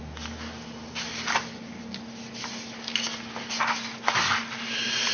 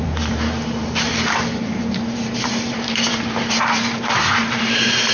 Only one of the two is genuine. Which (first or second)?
first